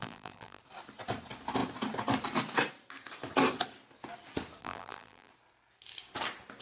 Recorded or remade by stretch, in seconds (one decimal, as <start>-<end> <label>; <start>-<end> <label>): 0.0-0.6 remade; 0.6-4.6 recorded; 4.6-5.3 remade; 5.3-6.6 recorded